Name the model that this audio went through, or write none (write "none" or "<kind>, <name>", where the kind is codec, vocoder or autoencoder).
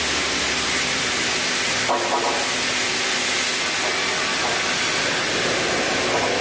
none